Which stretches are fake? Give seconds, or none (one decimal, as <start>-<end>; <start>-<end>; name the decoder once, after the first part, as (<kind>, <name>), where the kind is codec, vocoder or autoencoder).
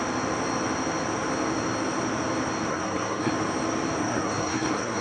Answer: 2.7-3.3 (codec, SNAC); 4.0-5.0